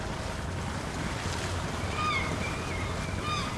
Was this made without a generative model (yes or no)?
yes